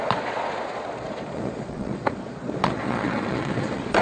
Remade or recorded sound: remade